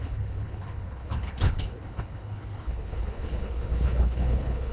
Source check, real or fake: fake